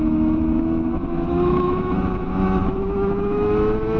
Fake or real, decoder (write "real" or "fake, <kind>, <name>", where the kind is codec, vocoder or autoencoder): fake, autoencoder, DAC-VAE